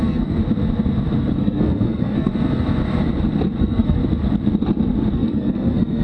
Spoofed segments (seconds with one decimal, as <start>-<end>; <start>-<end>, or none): 0.0-0.4; 1.4-2.3; 3.6-4.0; 5.1-6.0